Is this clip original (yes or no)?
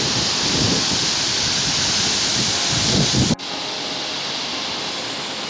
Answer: yes